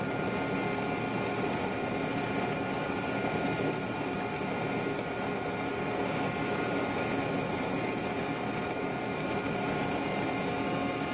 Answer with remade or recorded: recorded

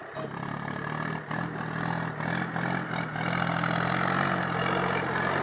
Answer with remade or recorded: recorded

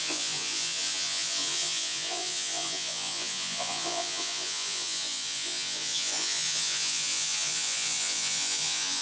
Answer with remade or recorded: remade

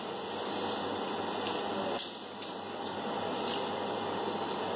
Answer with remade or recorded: recorded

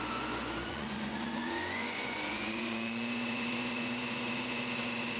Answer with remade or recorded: remade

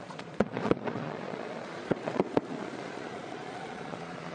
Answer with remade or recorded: remade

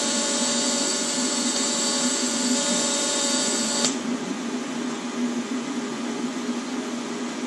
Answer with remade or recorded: remade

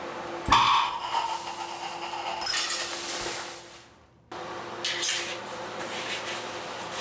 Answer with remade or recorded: recorded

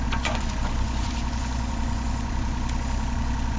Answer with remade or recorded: remade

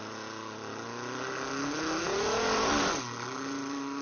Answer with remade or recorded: recorded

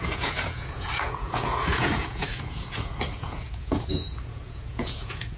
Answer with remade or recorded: remade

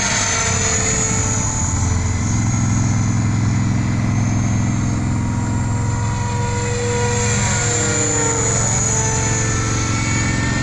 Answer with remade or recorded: recorded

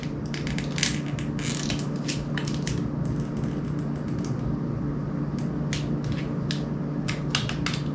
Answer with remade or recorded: recorded